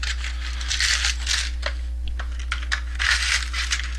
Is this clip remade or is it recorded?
recorded